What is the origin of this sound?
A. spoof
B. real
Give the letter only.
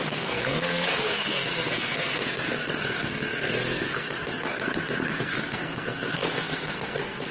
A